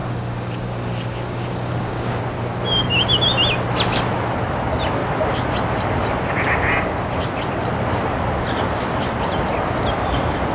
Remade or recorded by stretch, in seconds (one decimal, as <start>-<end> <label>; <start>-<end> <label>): 0.0-2.2 remade; 2.2-10.5 recorded